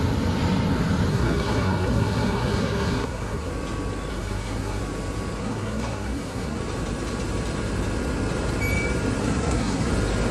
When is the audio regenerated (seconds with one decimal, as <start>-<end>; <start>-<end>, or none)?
1.1-3.5; 4.1-4.8; 5.4-6.6; 9.2-9.9